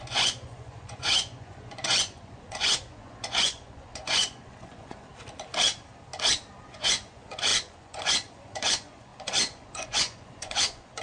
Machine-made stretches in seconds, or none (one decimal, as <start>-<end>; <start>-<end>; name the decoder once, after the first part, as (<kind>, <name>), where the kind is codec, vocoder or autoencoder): 0.0-5.1 (vocoder, Vocos); 6.7-11.0